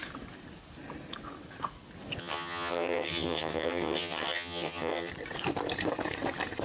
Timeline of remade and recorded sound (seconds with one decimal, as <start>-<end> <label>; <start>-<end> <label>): 0.0-2.2 recorded; 2.2-5.1 remade; 5.1-6.6 recorded

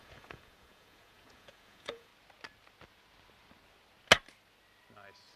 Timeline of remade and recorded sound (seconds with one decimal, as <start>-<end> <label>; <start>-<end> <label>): 0.0-2.1 remade; 2.1-5.4 recorded